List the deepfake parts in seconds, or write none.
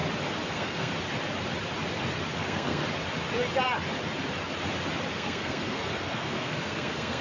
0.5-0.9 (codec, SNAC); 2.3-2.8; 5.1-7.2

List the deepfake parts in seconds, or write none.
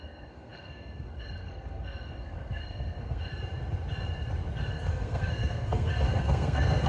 0.0-3.3 (codec, SNAC); 4.7-6.9